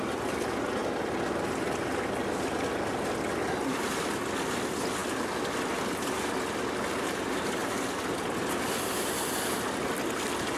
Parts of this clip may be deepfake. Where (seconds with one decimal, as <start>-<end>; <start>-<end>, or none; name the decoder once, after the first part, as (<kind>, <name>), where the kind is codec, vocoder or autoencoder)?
none